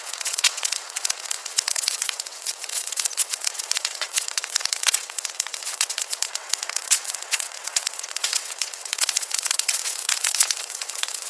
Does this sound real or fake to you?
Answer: fake